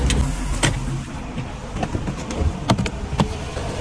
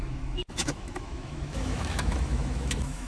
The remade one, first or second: second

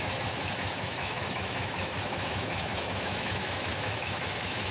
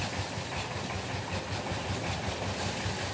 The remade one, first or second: first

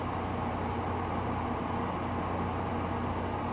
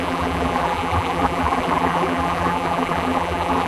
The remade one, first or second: second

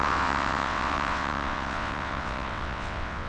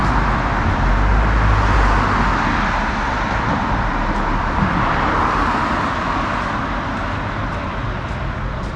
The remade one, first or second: first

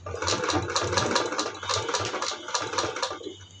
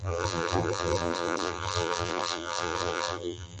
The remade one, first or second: second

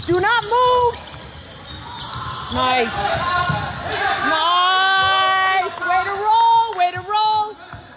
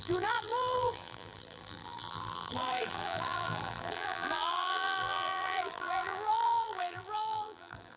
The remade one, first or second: second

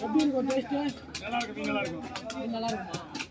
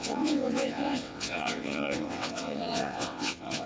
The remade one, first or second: second